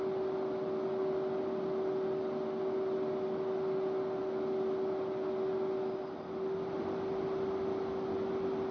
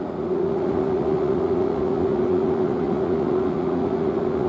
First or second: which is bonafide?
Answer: first